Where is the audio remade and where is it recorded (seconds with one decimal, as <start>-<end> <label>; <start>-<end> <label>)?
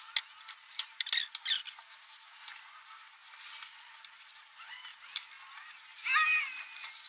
0.0-2.0 recorded; 2.0-2.5 remade; 2.5-7.1 recorded